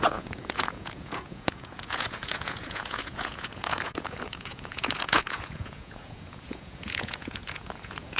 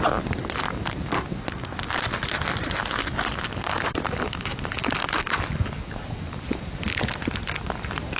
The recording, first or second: second